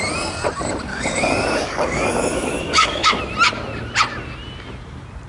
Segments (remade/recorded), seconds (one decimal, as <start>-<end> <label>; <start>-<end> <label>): 0.0-0.9 recorded; 0.9-3.2 remade; 3.2-5.3 recorded